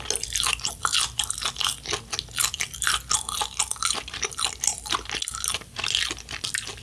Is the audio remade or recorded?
recorded